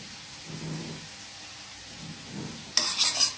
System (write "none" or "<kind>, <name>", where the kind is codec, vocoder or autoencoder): none